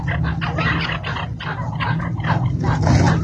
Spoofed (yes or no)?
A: no